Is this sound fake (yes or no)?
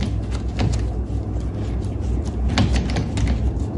no